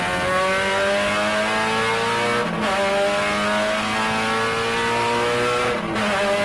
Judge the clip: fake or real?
real